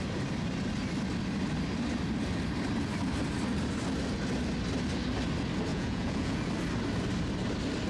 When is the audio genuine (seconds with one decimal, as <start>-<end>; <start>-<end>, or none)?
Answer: 0.0-5.7; 6.5-7.9